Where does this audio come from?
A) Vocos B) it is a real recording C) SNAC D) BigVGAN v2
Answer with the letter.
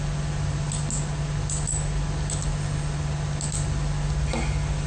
B